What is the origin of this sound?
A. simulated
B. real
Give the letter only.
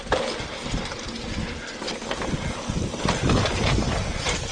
B